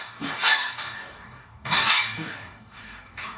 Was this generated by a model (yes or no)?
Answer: yes